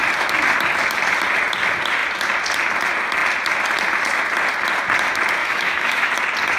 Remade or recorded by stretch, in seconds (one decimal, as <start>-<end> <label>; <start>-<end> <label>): 0.0-5.4 recorded; 5.4-6.1 remade; 6.1-6.6 recorded

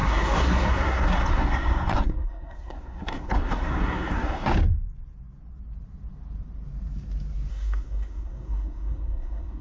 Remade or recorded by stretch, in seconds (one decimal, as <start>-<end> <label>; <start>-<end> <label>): 0.0-4.5 remade; 4.5-7.5 recorded; 7.5-9.6 remade

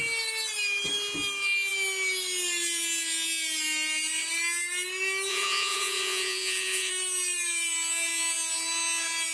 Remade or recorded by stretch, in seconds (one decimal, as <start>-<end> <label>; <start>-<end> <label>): 0.0-5.3 recorded; 5.3-6.9 remade; 6.9-9.3 recorded

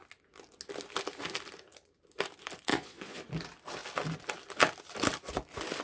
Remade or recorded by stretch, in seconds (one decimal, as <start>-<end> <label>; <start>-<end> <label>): 0.0-2.7 recorded; 2.7-3.2 remade; 3.2-5.8 recorded